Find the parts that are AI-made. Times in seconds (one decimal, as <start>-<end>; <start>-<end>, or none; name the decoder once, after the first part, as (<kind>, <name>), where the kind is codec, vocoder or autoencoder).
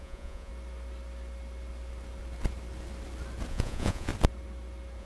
0.0-0.5 (vocoder, Vocos); 3.5-4.1